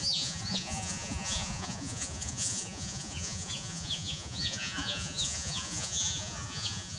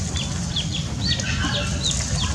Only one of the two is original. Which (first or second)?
second